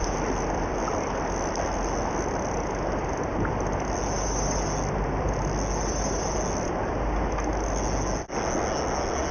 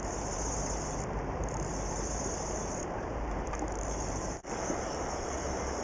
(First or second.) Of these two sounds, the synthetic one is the second